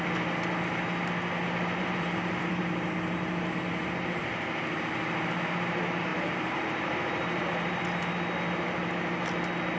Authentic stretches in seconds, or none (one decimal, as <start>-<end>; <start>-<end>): 0.0-1.8; 2.6-6.1; 7.8-9.8